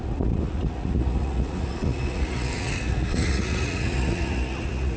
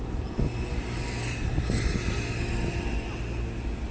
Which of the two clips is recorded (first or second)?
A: second